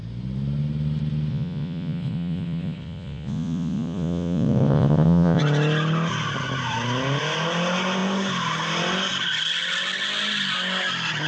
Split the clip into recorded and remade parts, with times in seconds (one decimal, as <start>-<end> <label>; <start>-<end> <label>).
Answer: 0.0-1.3 recorded; 1.3-5.4 remade; 5.4-11.3 recorded